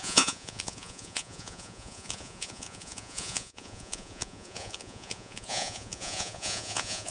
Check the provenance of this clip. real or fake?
fake